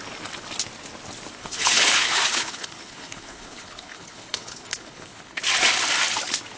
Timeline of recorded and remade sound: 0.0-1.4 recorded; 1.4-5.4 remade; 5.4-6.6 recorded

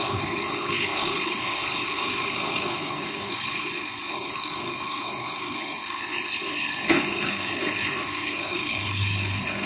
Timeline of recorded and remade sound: 0.0-9.7 remade

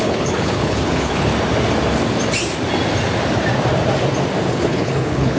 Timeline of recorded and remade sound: 0.0-1.3 remade; 1.3-4.5 recorded; 4.5-5.4 remade